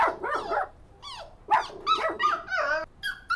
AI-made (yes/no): no